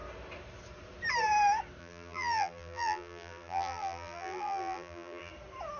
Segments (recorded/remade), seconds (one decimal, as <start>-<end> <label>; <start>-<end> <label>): 0.0-1.8 recorded; 1.8-5.3 remade; 5.3-5.8 recorded